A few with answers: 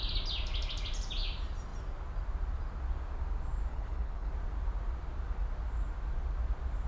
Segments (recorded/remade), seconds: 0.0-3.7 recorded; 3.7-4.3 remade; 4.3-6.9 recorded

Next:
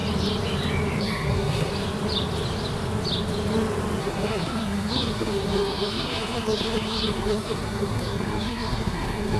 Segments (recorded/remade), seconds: 0.0-1.0 recorded; 1.0-1.7 remade; 1.7-4.0 recorded; 4.0-9.4 remade

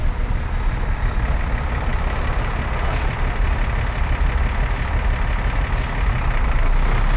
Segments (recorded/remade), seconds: 0.0-7.2 recorded

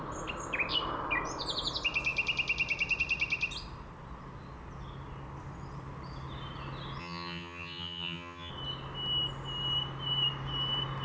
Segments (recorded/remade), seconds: 0.0-7.0 recorded; 7.0-8.5 remade; 8.5-11.0 recorded

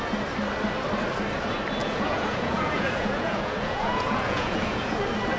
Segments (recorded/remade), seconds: 0.0-1.8 recorded; 1.8-5.0 remade; 5.0-5.4 recorded